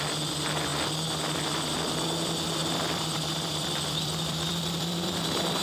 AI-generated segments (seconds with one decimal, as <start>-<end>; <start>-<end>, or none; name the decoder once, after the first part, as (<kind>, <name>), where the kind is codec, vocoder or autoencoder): 2.6-5.1 (vocoder, BigVGAN v2)